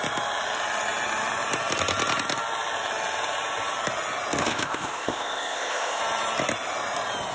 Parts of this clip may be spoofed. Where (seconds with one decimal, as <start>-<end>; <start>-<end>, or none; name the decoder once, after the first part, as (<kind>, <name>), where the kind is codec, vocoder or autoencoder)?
4.4-6.0 (codec, ZipCodec)